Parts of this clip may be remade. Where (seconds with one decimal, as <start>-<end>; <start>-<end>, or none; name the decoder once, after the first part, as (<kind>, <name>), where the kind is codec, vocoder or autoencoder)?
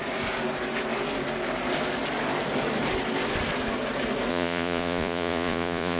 4.3-6.0 (vocoder, Vocos)